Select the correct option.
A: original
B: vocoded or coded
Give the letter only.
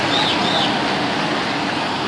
A